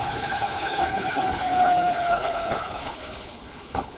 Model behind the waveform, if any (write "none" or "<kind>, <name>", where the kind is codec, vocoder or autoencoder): codec, HILCodec